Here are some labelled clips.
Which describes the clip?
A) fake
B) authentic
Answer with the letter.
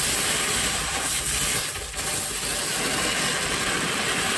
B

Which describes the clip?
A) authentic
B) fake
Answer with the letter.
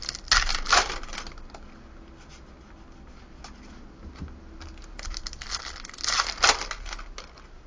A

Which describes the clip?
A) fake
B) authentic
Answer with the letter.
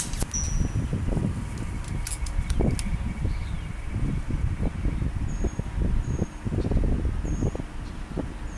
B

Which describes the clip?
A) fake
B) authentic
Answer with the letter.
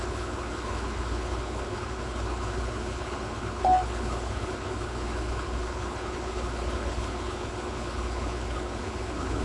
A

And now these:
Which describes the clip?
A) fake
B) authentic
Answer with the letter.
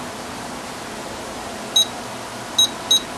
B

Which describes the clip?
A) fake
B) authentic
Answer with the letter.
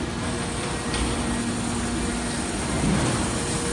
B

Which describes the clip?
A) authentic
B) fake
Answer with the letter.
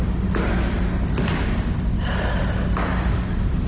A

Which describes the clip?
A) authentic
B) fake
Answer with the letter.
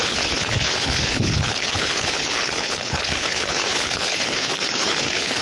B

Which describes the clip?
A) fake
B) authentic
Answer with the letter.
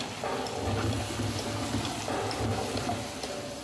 B